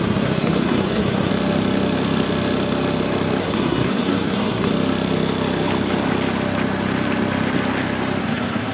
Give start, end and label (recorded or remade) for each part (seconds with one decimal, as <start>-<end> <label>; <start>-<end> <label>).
0.0-1.3 remade; 1.3-3.4 recorded; 3.4-4.7 remade; 4.7-8.2 recorded; 8.2-8.7 remade

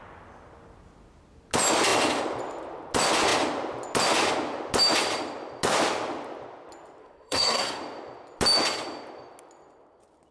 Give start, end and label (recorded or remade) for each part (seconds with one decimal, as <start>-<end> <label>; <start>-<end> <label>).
0.0-7.0 recorded; 7.0-7.8 remade; 7.8-10.3 recorded

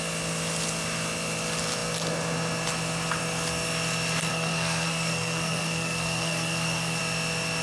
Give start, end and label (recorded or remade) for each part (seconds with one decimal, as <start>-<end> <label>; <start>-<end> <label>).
0.0-4.3 recorded; 4.3-7.0 remade; 7.0-7.6 recorded

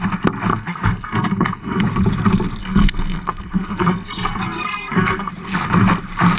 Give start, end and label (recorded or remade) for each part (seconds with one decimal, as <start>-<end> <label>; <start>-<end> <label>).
0.0-0.5 recorded; 0.5-1.8 remade; 1.8-2.6 recorded; 2.6-5.3 remade; 5.3-6.4 recorded

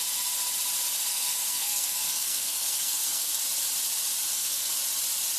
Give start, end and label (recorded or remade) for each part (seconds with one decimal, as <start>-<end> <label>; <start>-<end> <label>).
0.0-1.1 recorded; 1.1-3.4 remade; 3.4-4.3 recorded; 4.3-4.8 remade; 4.8-5.4 recorded

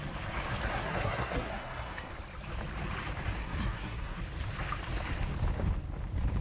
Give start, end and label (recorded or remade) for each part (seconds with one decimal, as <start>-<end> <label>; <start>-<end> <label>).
0.0-0.7 recorded; 0.7-2.1 remade; 2.1-3.4 recorded; 3.4-4.2 remade; 4.2-6.4 recorded

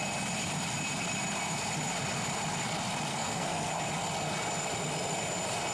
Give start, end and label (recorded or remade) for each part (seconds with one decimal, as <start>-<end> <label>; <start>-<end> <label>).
0.0-3.1 recorded; 3.1-3.7 remade; 3.7-5.7 recorded

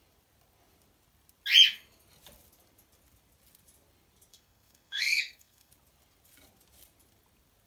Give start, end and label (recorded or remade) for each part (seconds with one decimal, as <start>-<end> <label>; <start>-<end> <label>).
0.0-4.3 recorded; 4.3-5.7 remade; 5.7-7.7 recorded